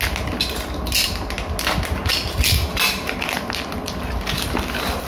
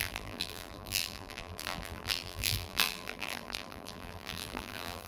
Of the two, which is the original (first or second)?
first